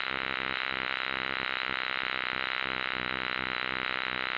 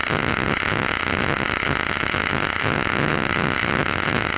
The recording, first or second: first